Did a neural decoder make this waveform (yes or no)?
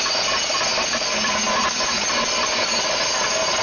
yes